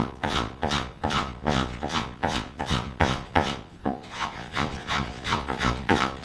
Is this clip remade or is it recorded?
remade